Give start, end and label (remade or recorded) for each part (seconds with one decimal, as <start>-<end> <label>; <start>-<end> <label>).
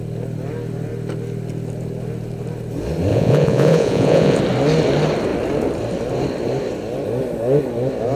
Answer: 0.0-3.1 recorded; 3.1-4.4 remade; 4.4-8.2 recorded